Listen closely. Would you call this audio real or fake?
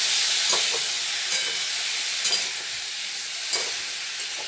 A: real